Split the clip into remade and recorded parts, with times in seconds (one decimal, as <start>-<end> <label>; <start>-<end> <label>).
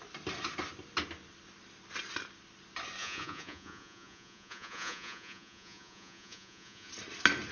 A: 0.0-3.0 recorded; 3.0-6.9 remade; 6.9-7.5 recorded